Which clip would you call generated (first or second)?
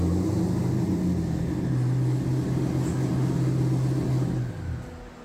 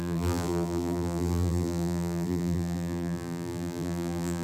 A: second